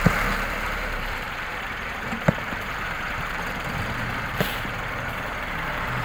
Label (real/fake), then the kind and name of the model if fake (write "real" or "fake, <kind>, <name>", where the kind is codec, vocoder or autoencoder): fake, vocoder, BigVGAN v2